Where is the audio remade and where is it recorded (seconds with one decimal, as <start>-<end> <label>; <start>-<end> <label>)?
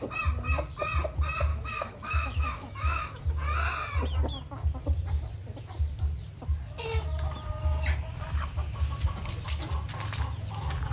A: 0.0-1.5 recorded; 1.5-3.2 remade; 3.2-10.9 recorded